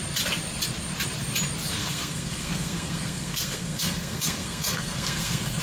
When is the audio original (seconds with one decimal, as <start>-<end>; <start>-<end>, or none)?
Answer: 0.0-1.8